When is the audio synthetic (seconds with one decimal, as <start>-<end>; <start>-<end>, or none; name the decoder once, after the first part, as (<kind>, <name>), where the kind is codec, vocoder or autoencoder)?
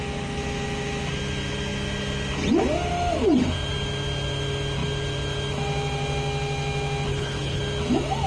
7.1-7.6 (codec, HILCodec)